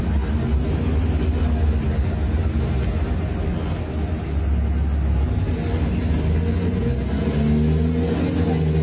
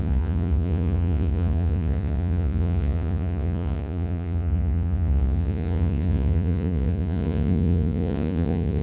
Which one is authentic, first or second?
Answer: first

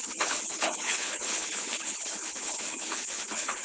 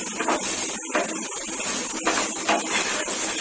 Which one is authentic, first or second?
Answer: second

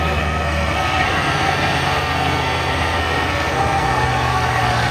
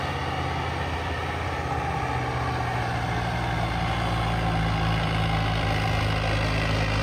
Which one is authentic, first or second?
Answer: second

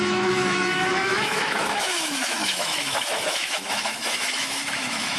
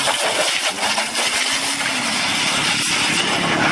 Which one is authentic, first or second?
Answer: second